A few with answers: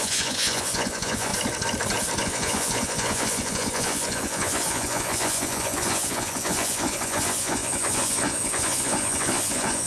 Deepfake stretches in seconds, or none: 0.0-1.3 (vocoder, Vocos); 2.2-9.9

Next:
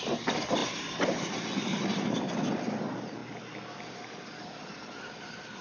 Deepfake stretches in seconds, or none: none

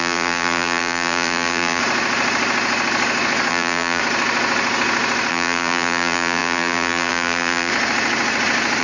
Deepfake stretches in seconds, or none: 0.0-1.8 (vocoder, BigVGAN v2); 3.5-4.0; 5.3-7.7